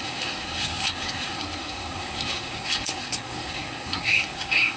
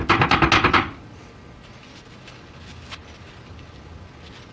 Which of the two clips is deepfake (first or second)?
first